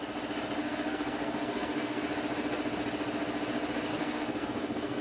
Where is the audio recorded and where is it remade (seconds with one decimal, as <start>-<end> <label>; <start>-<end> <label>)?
0.0-0.6 recorded; 0.6-2.0 remade; 2.0-3.9 recorded; 3.9-5.0 remade